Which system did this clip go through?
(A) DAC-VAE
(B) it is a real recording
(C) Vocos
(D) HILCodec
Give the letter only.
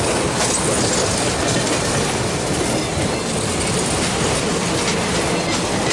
B